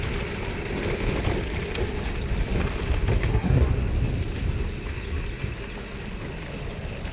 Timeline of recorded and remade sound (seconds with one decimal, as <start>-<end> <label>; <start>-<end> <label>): 0.0-3.2 recorded; 3.2-3.7 remade; 3.7-7.1 recorded